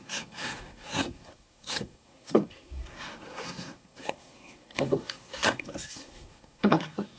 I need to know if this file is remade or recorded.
remade